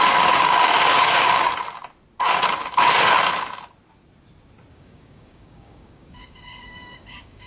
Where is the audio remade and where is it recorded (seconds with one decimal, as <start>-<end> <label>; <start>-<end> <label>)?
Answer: 0.0-1.5 remade; 1.5-4.7 recorded; 4.7-7.5 remade